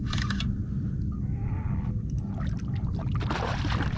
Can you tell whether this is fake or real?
real